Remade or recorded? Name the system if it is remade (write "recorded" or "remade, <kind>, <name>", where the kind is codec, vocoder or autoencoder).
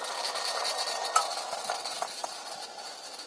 recorded